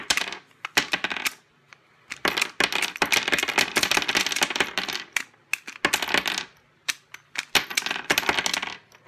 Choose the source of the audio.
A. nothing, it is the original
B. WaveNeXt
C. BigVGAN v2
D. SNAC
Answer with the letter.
A